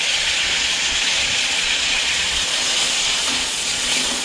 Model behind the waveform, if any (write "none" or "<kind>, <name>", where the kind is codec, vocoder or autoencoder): vocoder, Vocos